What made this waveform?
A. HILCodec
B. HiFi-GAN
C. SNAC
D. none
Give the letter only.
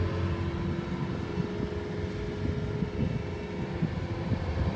D